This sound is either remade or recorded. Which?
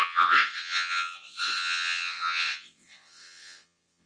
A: remade